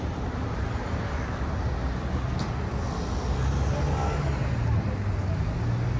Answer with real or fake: real